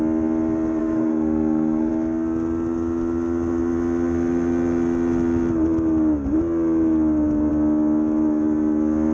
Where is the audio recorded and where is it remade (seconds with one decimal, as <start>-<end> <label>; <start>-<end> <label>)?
0.0-0.8 recorded; 0.8-1.9 remade; 1.9-9.1 recorded